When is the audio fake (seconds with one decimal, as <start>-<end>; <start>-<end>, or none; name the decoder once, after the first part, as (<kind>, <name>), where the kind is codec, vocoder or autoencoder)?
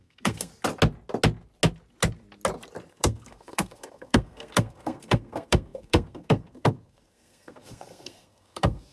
0.0-0.5 (codec, SNAC); 2.9-8.9